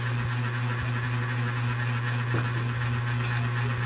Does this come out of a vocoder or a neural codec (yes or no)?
no